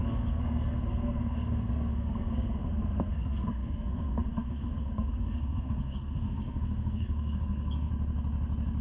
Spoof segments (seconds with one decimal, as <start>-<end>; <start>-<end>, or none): 0.0-7.9